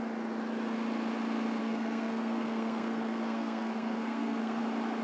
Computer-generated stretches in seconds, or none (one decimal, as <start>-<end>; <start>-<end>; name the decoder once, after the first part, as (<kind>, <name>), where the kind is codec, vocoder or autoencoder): 1.6-4.6 (codec, SNAC)

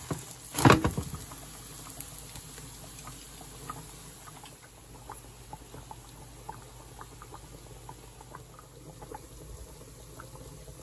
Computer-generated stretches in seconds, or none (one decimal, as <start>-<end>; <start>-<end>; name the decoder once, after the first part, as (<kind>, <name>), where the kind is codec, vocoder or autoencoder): none

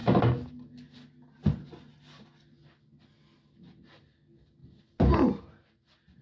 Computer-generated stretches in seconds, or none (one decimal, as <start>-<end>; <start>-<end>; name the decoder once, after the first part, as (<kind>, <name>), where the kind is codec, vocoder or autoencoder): none

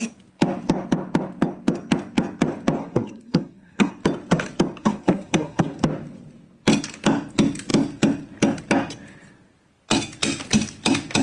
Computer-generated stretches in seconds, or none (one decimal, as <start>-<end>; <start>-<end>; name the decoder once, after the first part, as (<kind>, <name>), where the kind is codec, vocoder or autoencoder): 2.8-3.9 (codec, SNAC); 4.8-5.8

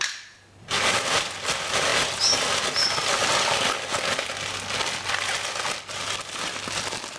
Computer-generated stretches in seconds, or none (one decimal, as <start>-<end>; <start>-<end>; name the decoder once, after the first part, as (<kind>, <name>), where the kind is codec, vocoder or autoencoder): none